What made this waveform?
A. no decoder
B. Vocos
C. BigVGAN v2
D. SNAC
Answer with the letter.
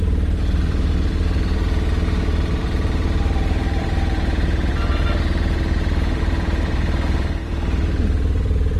C